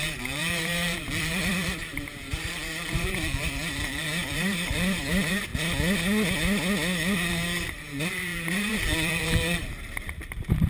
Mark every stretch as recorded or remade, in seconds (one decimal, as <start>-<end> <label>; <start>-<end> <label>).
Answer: 0.0-5.5 remade; 5.5-7.3 recorded; 7.3-10.7 remade